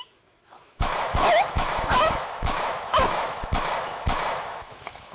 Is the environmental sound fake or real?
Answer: fake